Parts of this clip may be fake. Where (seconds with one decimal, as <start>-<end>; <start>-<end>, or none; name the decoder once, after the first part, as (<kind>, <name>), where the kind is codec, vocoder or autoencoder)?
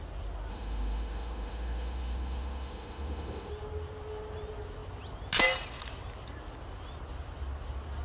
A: 0.5-3.5 (autoencoder, DAC-VAE)